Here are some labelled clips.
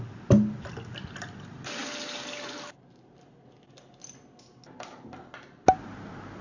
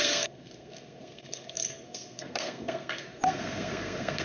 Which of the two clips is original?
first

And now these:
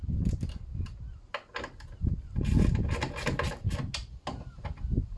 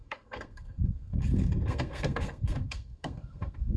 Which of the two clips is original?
first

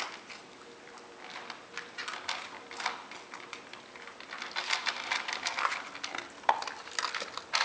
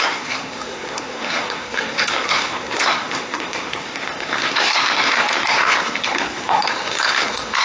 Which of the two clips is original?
first